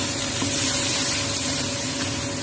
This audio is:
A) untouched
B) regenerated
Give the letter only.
A